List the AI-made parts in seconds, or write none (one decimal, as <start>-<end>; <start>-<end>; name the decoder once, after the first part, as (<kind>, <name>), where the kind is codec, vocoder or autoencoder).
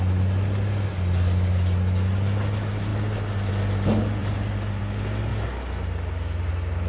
4.2-4.8 (vocoder, BigVGAN v2)